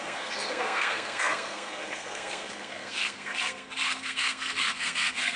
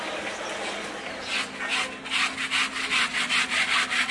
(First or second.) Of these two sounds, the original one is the second